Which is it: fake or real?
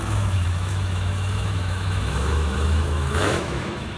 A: fake